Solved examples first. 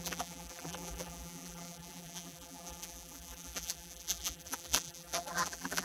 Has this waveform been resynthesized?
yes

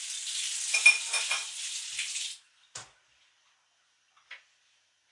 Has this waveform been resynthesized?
no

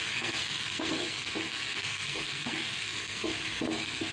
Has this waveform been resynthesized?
yes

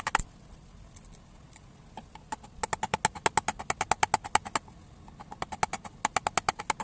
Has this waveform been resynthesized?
no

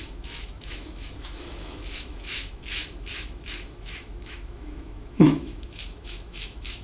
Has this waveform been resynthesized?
yes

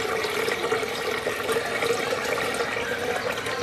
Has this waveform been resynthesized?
yes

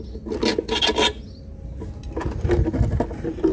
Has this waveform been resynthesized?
no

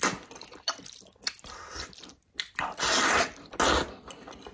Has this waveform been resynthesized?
no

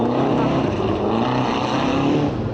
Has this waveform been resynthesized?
no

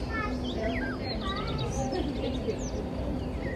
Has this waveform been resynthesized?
no